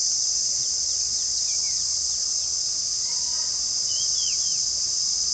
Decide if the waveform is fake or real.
fake